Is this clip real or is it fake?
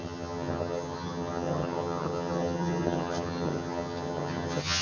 fake